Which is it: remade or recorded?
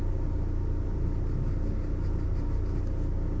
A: recorded